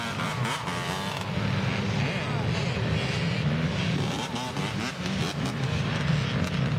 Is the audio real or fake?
real